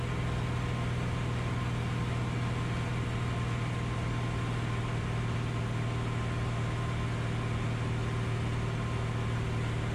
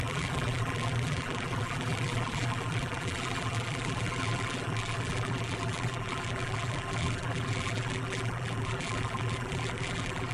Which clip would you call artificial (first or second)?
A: second